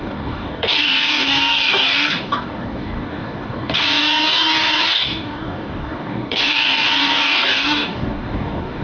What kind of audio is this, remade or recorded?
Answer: remade